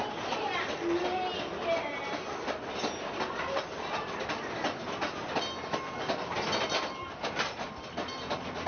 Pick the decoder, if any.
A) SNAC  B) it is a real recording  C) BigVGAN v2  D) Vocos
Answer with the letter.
B